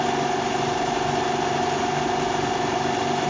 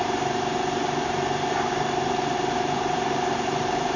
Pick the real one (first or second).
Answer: first